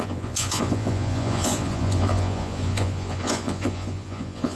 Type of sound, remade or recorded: remade